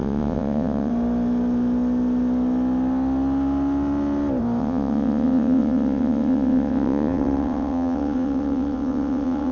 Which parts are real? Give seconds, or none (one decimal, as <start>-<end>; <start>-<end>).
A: 0.9-4.6